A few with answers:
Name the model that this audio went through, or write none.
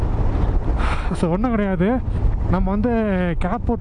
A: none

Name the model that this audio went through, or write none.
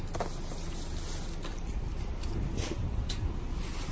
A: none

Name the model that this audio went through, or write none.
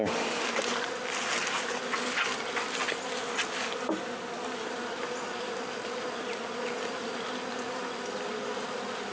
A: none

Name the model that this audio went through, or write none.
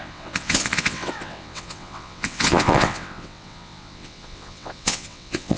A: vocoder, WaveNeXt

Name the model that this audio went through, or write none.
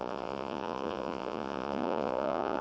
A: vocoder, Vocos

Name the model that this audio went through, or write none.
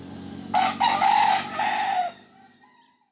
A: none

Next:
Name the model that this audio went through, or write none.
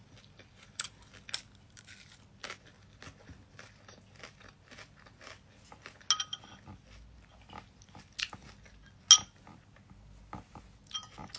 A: none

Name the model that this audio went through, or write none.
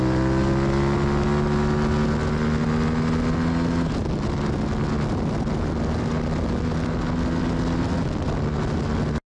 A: none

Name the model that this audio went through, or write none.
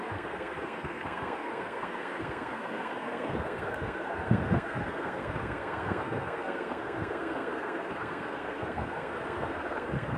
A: codec, SNAC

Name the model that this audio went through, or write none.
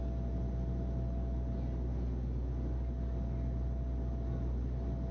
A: none